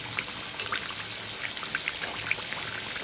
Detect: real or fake real